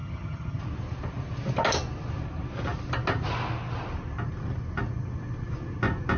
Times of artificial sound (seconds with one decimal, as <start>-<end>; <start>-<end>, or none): 0.0-0.6